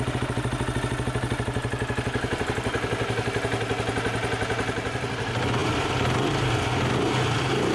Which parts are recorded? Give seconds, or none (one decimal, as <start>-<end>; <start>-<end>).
0.0-7.7